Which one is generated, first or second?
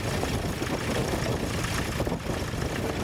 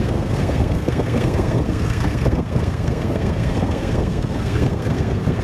second